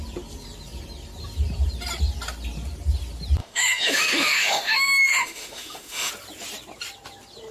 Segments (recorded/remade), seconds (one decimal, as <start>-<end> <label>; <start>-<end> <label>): 0.0-3.4 recorded; 3.4-6.1 remade; 6.1-7.5 recorded